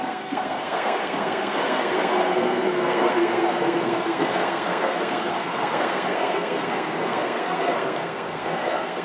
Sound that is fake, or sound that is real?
fake